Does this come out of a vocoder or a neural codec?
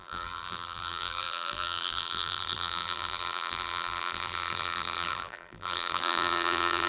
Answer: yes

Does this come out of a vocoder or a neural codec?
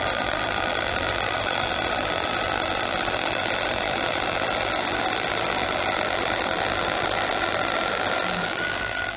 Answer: yes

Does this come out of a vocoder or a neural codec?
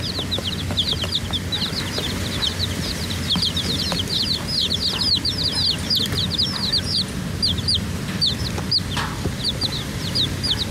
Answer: yes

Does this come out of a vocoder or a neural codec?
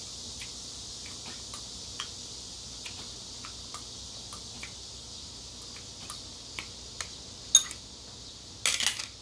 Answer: no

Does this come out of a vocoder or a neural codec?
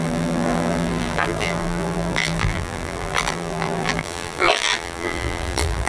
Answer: yes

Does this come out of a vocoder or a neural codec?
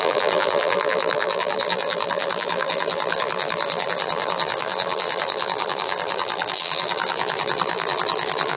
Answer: yes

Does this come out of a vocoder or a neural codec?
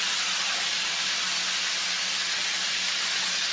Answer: no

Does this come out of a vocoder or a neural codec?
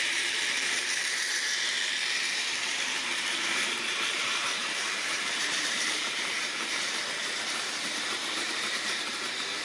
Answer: yes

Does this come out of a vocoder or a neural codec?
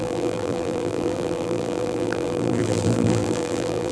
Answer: yes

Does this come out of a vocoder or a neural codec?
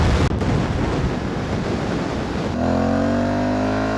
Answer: no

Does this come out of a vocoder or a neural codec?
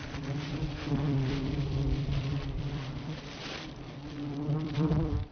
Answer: yes